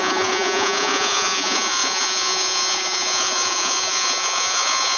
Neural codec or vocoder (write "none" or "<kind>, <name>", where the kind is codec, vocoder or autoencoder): vocoder, Vocos